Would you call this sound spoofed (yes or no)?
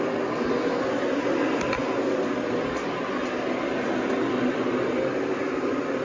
no